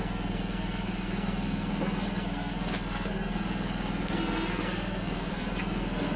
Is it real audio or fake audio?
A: fake